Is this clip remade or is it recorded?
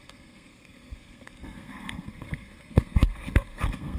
remade